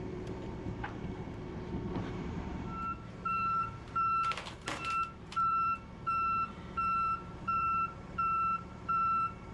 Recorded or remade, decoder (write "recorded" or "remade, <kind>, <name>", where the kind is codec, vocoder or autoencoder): remade, vocoder, BigVGAN v2